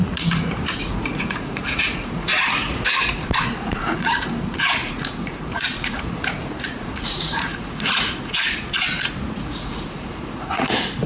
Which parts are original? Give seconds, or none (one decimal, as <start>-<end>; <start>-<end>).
none